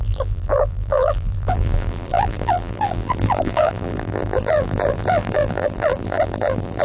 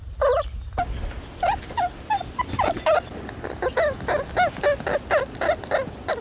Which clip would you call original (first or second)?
second